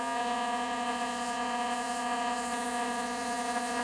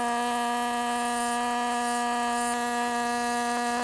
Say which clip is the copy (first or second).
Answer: first